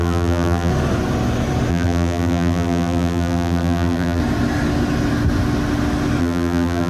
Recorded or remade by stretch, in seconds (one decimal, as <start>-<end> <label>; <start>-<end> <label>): 0.0-0.7 remade; 0.7-1.7 recorded; 1.7-4.2 remade; 4.2-6.2 recorded; 6.2-6.9 remade

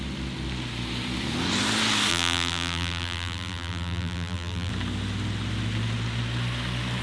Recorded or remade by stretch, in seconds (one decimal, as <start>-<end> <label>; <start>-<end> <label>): 0.0-2.1 recorded; 2.1-4.7 remade; 4.7-7.0 recorded